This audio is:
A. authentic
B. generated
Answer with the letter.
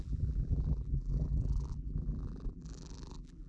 B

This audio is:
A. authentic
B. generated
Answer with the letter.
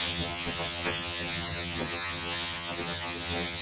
B